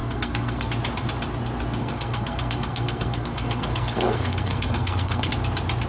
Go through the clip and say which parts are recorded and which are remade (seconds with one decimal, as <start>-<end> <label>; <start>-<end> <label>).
0.0-0.7 remade; 0.7-1.8 recorded; 1.8-5.3 remade; 5.3-5.9 recorded